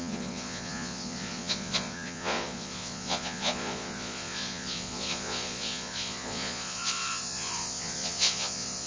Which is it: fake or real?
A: fake